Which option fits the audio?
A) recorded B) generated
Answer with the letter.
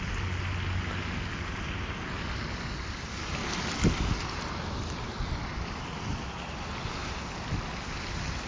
A